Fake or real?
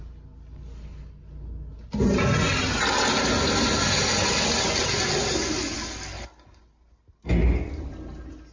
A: real